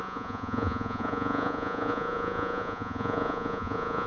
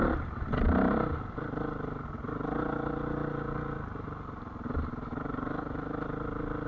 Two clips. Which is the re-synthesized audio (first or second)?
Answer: first